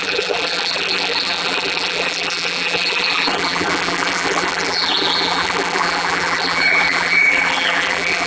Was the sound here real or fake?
fake